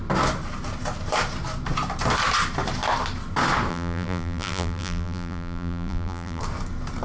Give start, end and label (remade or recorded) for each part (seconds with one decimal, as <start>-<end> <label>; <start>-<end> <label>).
0.0-3.7 recorded; 3.7-6.4 remade; 6.4-7.0 recorded